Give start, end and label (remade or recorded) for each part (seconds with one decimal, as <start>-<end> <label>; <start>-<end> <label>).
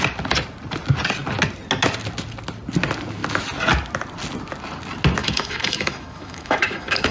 0.0-5.2 recorded; 5.2-7.1 remade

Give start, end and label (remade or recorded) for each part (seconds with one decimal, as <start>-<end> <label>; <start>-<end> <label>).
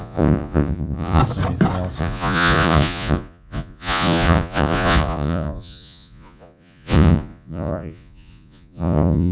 0.0-1.2 remade; 1.2-2.0 recorded; 2.0-9.3 remade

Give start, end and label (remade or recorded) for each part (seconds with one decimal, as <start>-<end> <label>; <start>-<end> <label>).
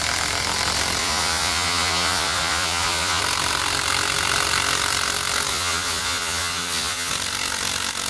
0.0-1.0 recorded; 1.0-3.2 remade; 3.2-5.5 recorded; 5.5-7.1 remade; 7.1-8.1 recorded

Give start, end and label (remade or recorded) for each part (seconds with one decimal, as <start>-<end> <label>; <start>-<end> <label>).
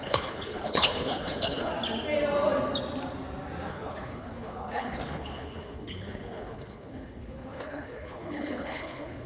0.0-1.7 remade; 1.7-3.7 recorded; 3.7-9.3 remade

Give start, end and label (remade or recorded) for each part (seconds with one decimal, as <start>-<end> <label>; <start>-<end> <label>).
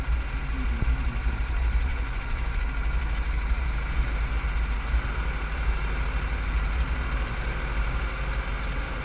0.0-1.9 recorded; 1.9-2.6 remade; 2.6-9.0 recorded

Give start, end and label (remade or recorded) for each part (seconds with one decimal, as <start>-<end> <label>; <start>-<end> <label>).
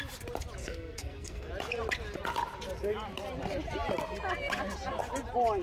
0.0-0.6 recorded; 0.6-1.5 remade; 1.5-5.6 recorded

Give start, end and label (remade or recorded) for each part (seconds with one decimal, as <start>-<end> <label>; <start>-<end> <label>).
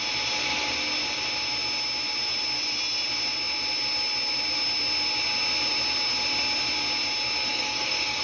0.0-7.5 recorded; 7.5-8.2 remade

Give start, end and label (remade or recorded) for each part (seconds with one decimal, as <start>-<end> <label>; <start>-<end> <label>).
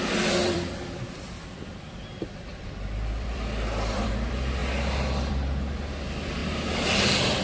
0.0-0.4 recorded; 0.4-4.1 remade; 4.1-7.4 recorded